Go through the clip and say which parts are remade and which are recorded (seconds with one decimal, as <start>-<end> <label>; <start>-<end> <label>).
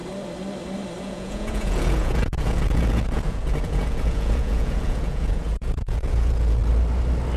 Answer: 0.0-1.0 recorded; 1.0-6.6 remade; 6.6-7.4 recorded